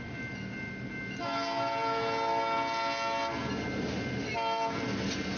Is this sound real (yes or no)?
yes